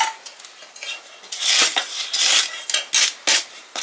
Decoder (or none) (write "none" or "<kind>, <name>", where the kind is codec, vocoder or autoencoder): none